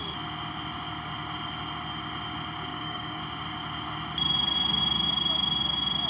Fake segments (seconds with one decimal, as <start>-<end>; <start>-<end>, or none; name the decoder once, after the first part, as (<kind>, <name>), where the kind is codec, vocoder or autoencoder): 2.7-3.2 (codec, DAC)